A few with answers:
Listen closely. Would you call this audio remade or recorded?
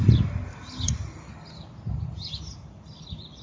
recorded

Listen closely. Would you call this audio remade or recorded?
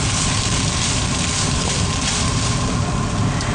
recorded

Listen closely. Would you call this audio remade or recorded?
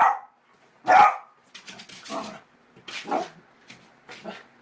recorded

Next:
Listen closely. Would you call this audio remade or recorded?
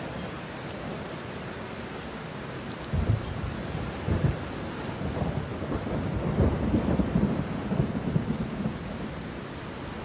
recorded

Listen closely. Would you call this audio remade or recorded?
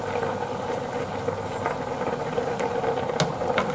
recorded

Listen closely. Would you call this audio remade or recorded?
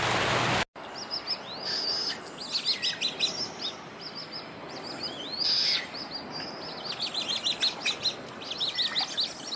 recorded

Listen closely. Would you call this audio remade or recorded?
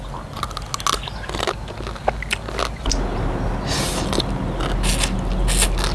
recorded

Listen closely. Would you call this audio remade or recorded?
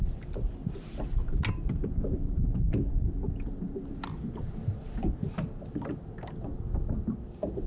recorded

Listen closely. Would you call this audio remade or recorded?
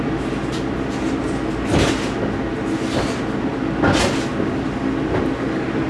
recorded